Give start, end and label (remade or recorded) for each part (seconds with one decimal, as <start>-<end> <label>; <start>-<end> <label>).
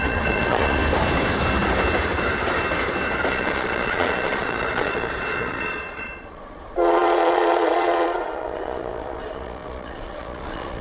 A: 0.0-0.8 remade; 0.8-3.3 recorded; 3.3-10.8 remade